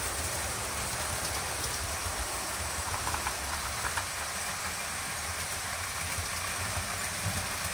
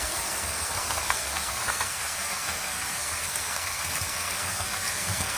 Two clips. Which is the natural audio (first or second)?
first